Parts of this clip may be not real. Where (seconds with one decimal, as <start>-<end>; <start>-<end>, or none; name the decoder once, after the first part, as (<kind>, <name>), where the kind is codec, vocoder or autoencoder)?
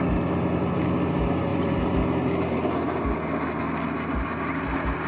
none